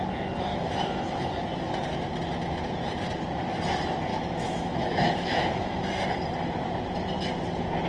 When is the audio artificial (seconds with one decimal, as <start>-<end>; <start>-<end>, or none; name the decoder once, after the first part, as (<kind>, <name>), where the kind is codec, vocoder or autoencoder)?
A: 0.5-1.3 (autoencoder, DAC-VAE); 4.1-5.8

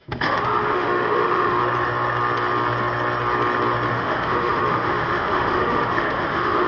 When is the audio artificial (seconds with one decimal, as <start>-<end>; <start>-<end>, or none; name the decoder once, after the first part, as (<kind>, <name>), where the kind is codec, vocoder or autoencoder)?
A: 0.0-1.6 (autoencoder, DAC-VAE); 3.9-6.7